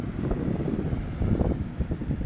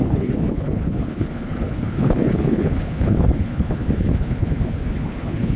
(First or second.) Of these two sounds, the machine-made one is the second